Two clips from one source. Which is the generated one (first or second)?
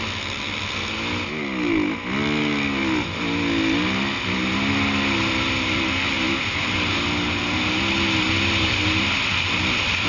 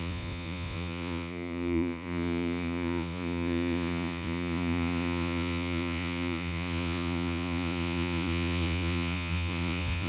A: second